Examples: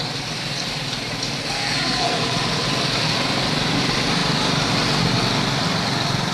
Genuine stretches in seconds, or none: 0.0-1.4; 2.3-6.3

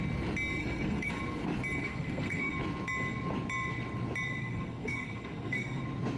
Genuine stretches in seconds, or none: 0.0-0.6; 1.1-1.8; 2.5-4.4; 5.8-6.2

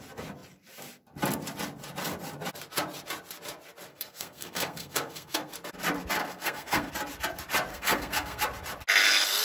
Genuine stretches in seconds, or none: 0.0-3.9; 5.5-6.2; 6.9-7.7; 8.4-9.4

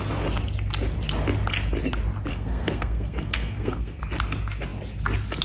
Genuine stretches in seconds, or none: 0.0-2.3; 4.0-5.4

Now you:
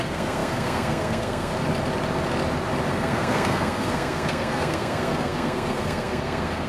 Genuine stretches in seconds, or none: 1.5-2.9

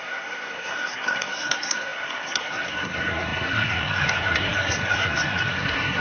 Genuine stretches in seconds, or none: none

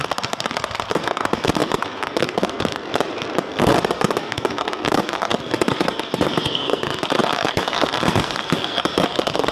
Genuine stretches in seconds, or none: 2.9-3.4